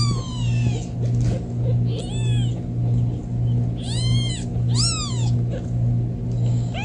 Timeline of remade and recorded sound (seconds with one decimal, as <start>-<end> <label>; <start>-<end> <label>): 0.0-6.8 recorded